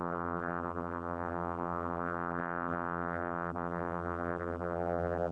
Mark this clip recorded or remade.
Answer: remade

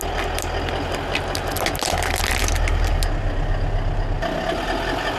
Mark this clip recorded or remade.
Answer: recorded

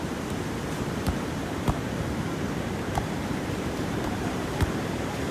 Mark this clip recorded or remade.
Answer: remade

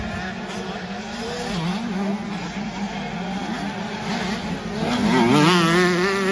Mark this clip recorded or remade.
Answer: recorded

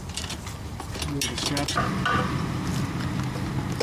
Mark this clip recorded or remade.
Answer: recorded